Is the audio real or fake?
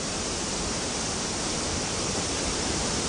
fake